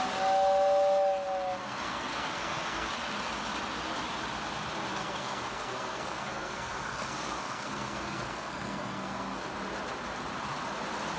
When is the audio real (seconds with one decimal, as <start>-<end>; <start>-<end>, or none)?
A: 0.0-1.6; 2.9-4.9; 9.4-11.2